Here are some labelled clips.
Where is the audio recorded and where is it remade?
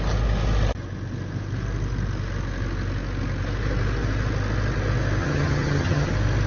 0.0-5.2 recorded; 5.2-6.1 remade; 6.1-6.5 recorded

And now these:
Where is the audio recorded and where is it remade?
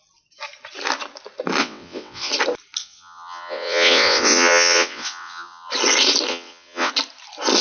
0.0-1.6 recorded; 1.6-2.3 remade; 2.3-2.8 recorded; 2.8-5.7 remade; 5.7-6.3 recorded; 6.3-6.9 remade; 6.9-7.6 recorded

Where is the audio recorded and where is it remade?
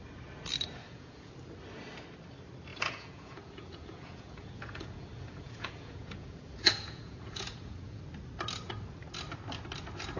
0.0-0.8 recorded; 0.8-1.3 remade; 1.3-2.7 recorded; 2.7-8.0 remade; 8.0-10.2 recorded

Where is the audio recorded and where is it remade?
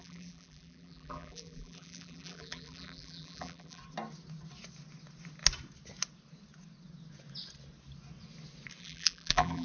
0.0-3.8 remade; 3.8-8.8 recorded; 8.8-9.6 remade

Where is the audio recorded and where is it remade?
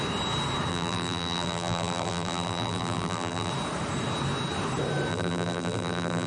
0.0-0.7 recorded; 0.7-3.5 remade; 3.5-5.1 recorded; 5.1-6.3 remade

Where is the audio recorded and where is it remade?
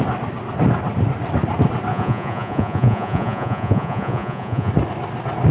0.0-1.9 recorded; 1.9-4.7 remade; 4.7-5.5 recorded